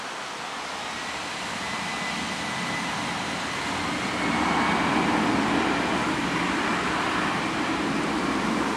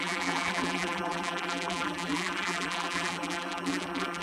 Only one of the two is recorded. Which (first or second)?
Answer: first